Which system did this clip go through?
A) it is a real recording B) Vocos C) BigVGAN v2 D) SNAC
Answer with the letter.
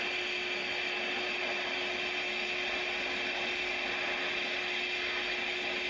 A